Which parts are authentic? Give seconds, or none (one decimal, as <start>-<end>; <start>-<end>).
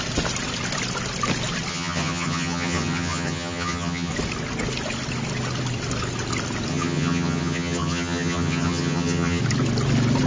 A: 0.0-1.7; 4.1-6.7; 9.4-10.3